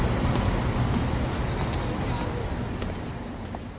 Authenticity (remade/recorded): recorded